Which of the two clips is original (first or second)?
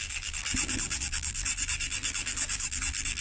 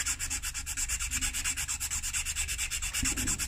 second